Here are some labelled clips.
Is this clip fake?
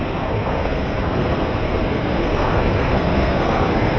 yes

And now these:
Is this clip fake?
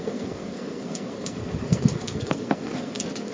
yes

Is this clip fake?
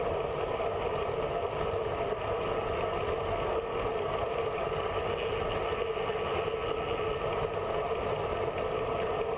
no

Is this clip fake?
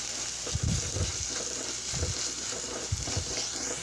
no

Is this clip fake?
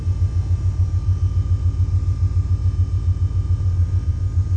no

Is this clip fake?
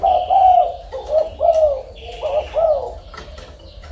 no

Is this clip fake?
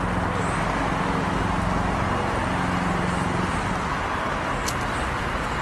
no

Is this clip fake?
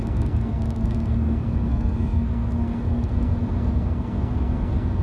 yes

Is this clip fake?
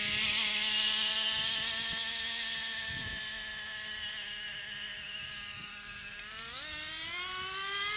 no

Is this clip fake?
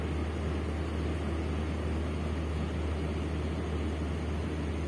no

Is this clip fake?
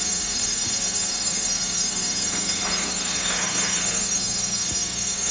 yes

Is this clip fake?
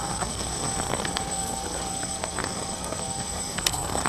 yes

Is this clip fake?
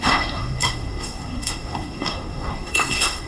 yes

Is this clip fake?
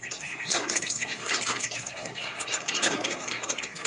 yes